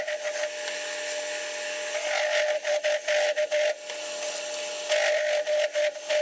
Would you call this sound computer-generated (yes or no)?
no